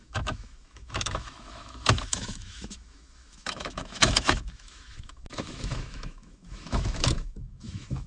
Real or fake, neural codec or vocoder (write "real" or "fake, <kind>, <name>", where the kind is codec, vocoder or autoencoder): fake, autoencoder, DAC-VAE